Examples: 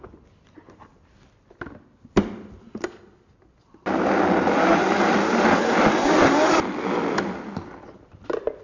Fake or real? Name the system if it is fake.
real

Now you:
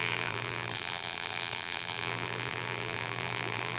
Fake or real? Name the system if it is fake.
fake, vocoder, BigVGAN v2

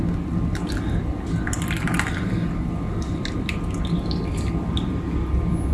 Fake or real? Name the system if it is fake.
real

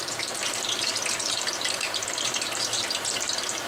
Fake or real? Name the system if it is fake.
fake, vocoder, BigVGAN v2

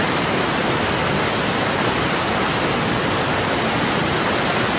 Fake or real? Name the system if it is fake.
real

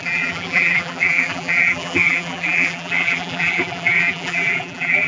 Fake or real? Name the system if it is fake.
fake, vocoder, BigVGAN v2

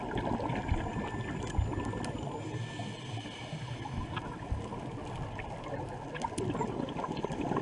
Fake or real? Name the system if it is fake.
real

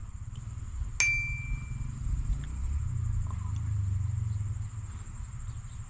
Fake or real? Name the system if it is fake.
real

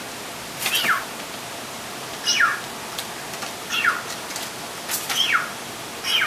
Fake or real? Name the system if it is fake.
real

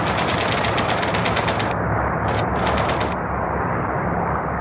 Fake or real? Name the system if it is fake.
real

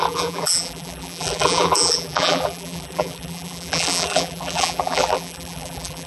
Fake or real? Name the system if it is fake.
fake, vocoder, BigVGAN v2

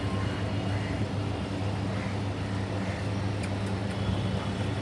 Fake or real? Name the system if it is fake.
real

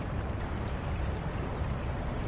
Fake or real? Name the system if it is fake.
fake, vocoder, BigVGAN v2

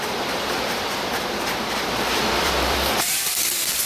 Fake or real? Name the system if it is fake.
fake, vocoder, BigVGAN v2